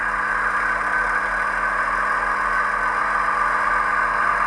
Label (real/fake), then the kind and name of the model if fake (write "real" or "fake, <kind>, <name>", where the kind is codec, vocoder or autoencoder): real